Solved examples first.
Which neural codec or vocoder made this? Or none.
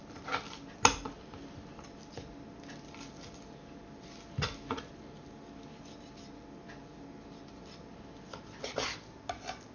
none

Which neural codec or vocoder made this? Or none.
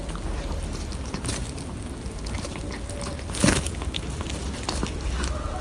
none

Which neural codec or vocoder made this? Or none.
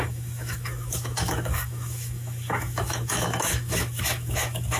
autoencoder, DAC-VAE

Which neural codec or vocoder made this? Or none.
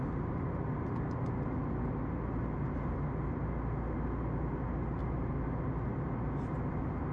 none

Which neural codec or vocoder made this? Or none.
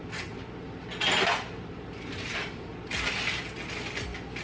none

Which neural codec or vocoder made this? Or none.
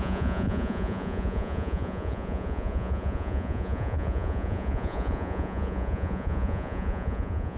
vocoder, Vocos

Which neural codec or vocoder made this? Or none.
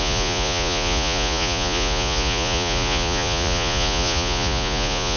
vocoder, Vocos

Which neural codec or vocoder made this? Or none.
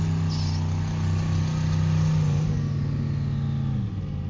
none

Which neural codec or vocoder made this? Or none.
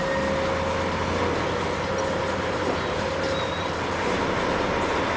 none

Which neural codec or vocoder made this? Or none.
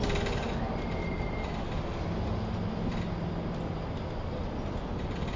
none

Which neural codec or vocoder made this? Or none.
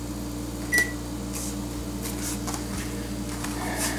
none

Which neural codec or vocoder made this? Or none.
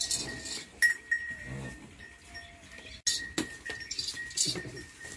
none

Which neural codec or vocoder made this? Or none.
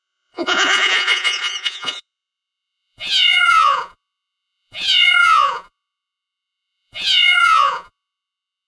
vocoder, Vocos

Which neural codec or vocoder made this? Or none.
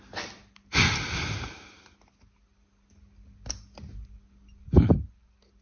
none